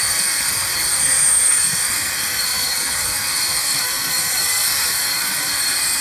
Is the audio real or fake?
fake